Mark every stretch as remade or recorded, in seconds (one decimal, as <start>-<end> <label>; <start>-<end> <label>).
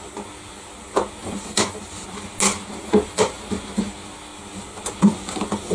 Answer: 0.0-1.2 recorded; 1.2-1.8 remade; 1.8-2.8 recorded; 2.8-3.5 remade; 3.5-5.7 recorded